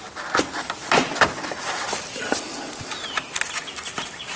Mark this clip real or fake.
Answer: real